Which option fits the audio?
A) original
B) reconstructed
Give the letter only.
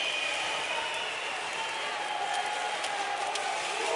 A